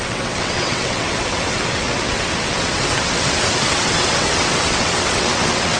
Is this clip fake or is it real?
fake